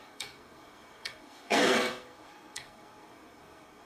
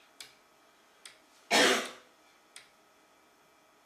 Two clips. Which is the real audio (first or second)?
second